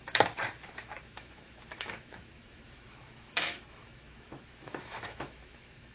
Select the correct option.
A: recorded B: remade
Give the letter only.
B